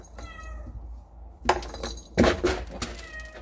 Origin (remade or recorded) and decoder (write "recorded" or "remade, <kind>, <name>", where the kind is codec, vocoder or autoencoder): recorded